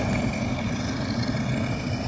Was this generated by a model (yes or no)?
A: no